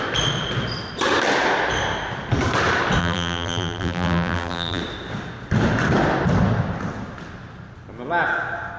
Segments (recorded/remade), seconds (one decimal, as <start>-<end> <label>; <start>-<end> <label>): 0.0-3.0 recorded; 3.0-4.8 remade; 4.8-8.8 recorded